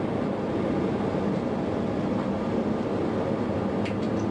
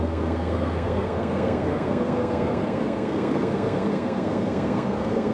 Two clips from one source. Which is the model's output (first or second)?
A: second